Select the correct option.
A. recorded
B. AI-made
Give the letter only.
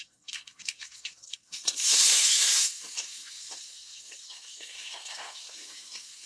B